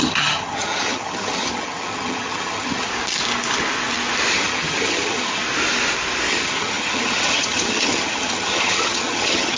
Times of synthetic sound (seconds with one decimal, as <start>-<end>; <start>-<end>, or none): 0.0-2.9; 4.3-5.4; 6.3-9.6